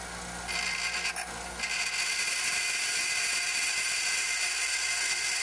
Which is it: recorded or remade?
recorded